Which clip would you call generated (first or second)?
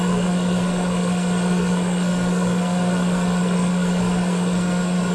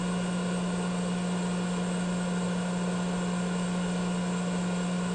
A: first